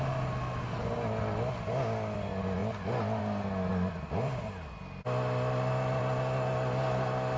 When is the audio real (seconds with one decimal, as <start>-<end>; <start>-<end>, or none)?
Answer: 0.0-7.4